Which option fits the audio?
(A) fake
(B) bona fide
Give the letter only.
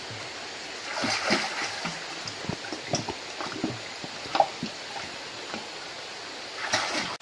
B